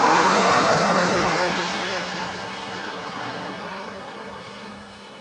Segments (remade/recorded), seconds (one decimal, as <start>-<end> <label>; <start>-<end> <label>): 0.0-5.2 remade